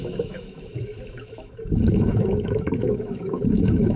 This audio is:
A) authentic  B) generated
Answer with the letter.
B